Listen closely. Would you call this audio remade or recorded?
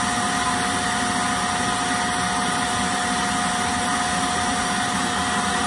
recorded